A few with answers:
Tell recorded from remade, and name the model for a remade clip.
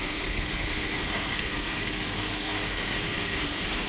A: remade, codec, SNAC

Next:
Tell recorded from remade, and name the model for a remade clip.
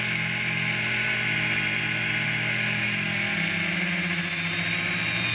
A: recorded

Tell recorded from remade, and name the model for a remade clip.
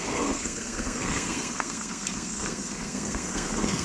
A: remade, codec, SNAC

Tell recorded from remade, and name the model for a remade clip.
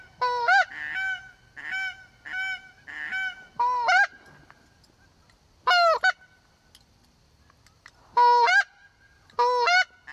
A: recorded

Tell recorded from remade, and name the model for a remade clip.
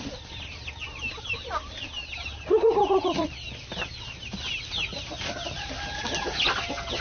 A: recorded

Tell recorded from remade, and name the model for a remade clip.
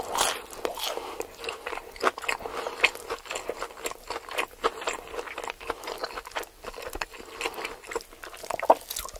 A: recorded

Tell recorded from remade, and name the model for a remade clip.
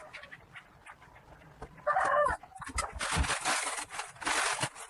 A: recorded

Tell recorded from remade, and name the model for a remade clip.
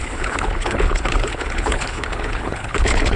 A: remade, codec, HILCodec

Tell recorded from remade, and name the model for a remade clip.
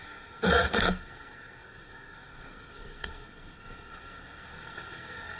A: remade, codec, SNAC